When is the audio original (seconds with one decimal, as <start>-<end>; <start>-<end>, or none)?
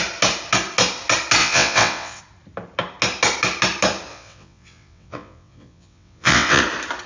0.0-1.4; 2.2-4.1; 6.6-7.1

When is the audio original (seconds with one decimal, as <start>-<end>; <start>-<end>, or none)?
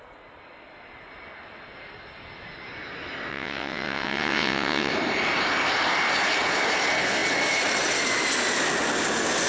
0.0-3.3; 4.9-9.5